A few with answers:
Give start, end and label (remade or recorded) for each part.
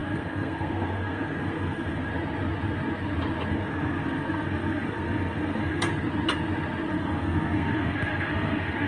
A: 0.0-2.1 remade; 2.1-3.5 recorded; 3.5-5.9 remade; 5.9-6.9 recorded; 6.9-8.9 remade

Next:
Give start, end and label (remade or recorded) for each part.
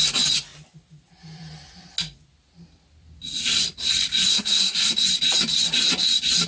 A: 0.0-4.3 recorded; 4.3-4.9 remade; 4.9-6.5 recorded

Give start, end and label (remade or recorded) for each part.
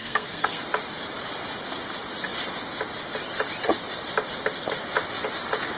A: 0.0-0.6 remade; 0.6-5.8 recorded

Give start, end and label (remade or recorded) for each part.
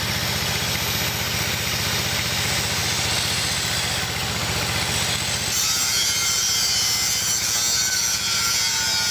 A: 0.0-9.1 recorded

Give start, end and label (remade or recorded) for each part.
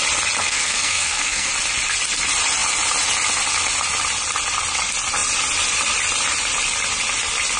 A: 0.0-0.4 recorded; 0.4-1.5 remade; 1.5-7.6 recorded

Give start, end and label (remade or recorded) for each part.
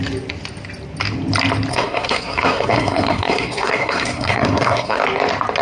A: 0.0-1.7 recorded; 1.7-5.0 remade; 5.0-5.6 recorded